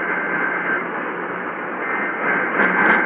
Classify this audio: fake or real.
real